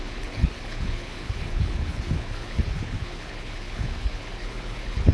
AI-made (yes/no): yes